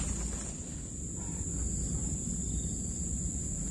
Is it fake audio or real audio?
real